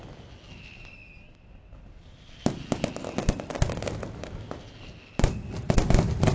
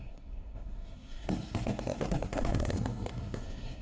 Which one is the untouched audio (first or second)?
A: first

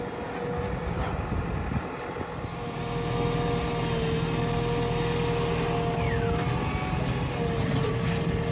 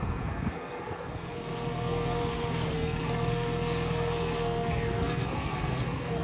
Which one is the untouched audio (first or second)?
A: first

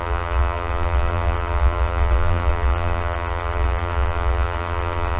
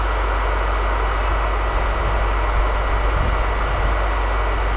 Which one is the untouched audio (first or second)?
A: second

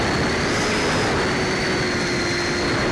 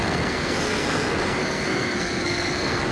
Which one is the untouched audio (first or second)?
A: first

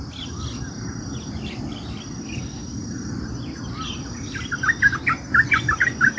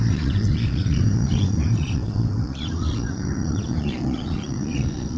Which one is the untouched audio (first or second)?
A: first